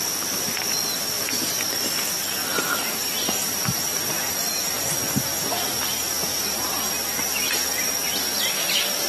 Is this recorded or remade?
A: recorded